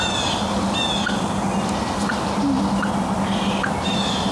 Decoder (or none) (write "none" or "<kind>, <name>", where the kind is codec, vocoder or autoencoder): none